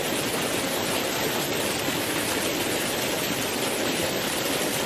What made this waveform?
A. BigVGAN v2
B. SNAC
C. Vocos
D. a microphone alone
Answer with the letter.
D